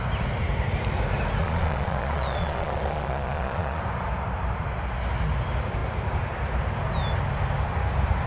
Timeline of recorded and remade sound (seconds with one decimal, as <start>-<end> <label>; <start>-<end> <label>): 0.0-1.4 recorded; 1.4-3.8 remade; 3.8-8.3 recorded